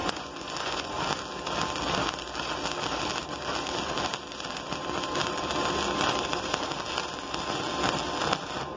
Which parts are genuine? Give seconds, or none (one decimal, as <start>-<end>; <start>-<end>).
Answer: 0.9-8.8